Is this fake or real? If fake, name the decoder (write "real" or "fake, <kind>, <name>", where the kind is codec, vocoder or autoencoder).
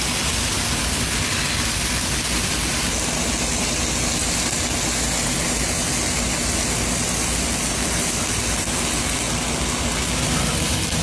real